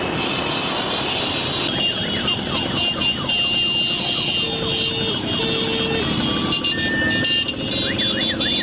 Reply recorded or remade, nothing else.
recorded